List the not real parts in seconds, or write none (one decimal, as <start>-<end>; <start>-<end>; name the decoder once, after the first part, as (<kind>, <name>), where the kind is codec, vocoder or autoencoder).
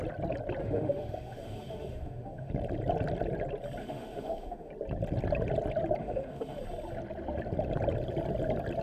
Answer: 0.6-2.5 (autoencoder, DAC-VAE); 3.8-4.7; 6.0-6.6